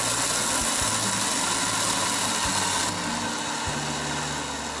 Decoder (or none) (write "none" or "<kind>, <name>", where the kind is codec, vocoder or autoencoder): none